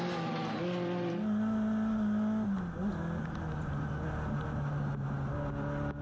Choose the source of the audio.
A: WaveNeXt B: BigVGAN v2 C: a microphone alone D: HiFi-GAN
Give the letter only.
C